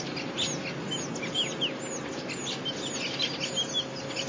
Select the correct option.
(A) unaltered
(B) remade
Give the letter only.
A